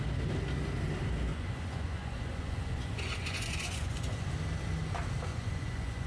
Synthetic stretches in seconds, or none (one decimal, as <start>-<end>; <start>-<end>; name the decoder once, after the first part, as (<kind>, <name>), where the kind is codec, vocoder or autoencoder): 1.3-4.3 (vocoder, Vocos); 5.3-6.1